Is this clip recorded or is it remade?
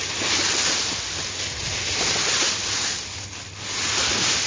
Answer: recorded